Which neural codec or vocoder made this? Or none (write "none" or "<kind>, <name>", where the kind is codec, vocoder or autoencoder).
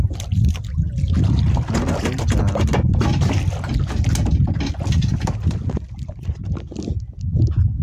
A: none